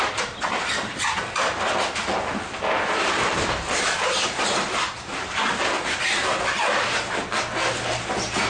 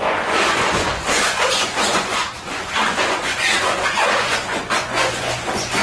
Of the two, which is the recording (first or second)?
first